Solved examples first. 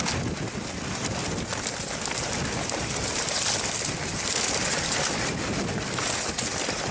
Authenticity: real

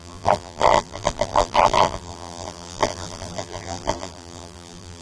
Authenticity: fake